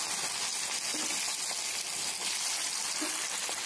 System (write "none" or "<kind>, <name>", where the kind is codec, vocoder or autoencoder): none